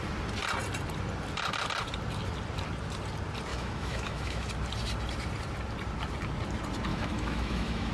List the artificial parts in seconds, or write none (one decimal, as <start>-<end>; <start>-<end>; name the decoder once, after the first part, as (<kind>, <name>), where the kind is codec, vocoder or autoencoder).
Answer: 3.5-4.5 (autoencoder, DAC-VAE); 6.9-7.9